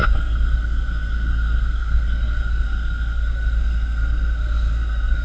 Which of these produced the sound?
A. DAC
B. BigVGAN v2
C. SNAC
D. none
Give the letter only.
C